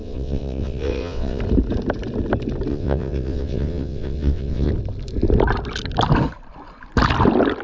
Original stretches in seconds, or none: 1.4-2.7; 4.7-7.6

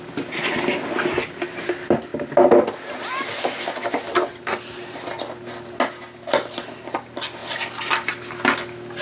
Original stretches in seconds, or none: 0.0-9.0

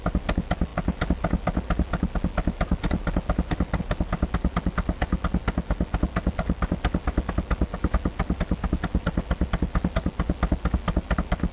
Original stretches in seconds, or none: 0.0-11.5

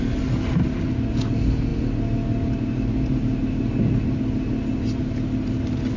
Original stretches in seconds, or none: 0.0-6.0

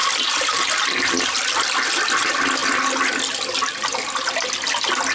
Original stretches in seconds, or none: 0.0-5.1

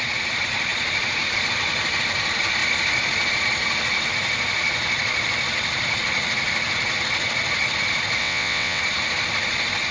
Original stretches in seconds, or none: 0.0-8.2; 8.8-9.9

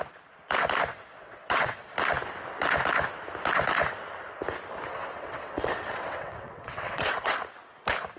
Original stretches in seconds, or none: 0.0-0.9; 1.9-4.9; 7.3-8.2

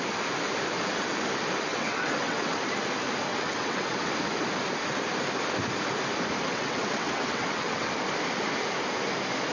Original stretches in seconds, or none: 0.0-1.7; 2.6-3.3; 4.1-6.4; 7.9-9.5